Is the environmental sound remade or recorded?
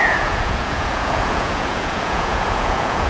remade